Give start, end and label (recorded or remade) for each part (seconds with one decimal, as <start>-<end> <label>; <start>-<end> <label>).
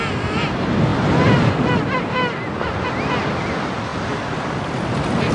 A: 0.0-0.9 recorded; 0.9-1.5 remade; 1.5-5.3 recorded